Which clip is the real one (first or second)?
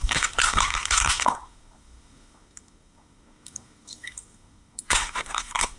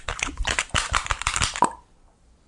second